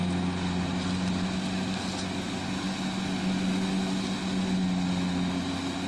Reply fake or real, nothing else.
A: real